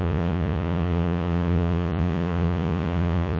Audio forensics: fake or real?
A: fake